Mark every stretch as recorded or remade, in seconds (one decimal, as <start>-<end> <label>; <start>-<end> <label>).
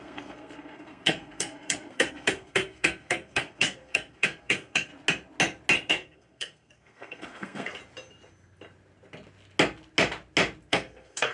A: 0.0-4.9 remade; 4.9-5.9 recorded; 5.9-7.8 remade; 7.8-10.7 recorded; 10.7-11.3 remade